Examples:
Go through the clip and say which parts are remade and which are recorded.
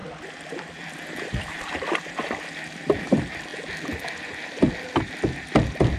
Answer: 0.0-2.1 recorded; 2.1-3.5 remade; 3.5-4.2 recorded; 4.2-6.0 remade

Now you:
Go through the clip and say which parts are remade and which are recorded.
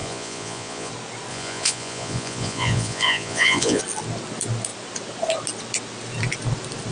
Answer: 0.0-0.9 remade; 0.9-1.3 recorded; 1.3-3.8 remade; 3.8-6.9 recorded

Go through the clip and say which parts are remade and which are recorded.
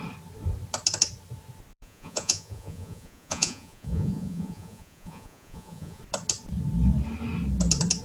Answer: 0.0-1.7 recorded; 1.7-6.0 remade; 6.0-8.0 recorded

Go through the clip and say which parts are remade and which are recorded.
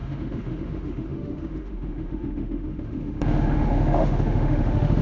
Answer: 0.0-5.0 remade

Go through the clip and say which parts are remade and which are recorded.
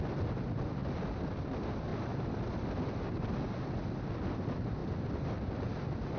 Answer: 0.0-6.2 recorded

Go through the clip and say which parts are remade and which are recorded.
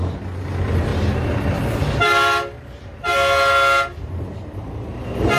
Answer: 0.0-0.9 remade; 0.9-4.1 recorded; 4.1-5.4 remade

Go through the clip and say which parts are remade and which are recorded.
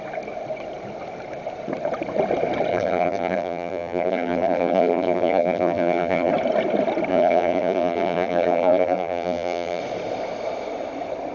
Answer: 0.0-2.7 recorded; 2.7-6.3 remade; 6.3-7.1 recorded; 7.1-9.8 remade; 9.8-11.3 recorded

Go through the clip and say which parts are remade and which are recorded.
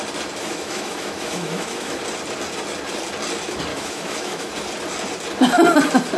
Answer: 0.0-0.4 recorded; 0.4-2.0 remade; 2.0-3.7 recorded; 3.7-4.5 remade; 4.5-6.2 recorded